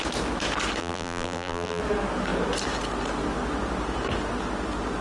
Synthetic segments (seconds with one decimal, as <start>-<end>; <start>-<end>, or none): 0.8-1.8